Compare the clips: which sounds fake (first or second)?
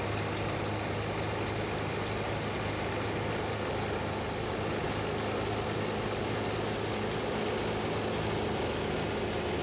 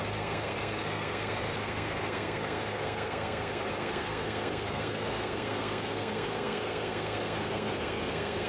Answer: second